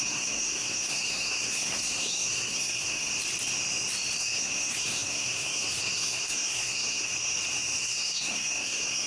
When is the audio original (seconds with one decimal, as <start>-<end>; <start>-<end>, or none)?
3.1-4.2; 7.1-7.8